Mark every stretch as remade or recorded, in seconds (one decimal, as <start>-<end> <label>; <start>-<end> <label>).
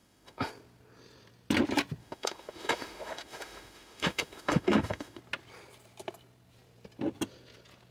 0.0-0.5 remade; 0.5-2.0 recorded; 2.0-5.2 remade; 5.2-7.9 recorded